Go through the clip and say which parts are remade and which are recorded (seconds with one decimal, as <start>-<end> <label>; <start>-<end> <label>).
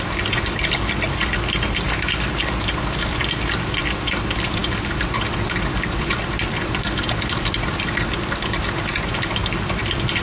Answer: 0.0-10.2 recorded